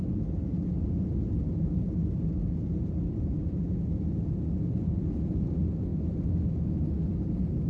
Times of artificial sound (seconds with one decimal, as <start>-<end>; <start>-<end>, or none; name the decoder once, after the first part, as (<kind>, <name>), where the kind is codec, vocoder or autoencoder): 2.6-3.5 (vocoder, BigVGAN v2); 5.9-7.3